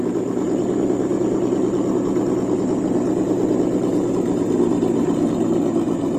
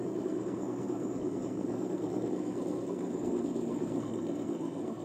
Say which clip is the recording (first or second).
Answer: first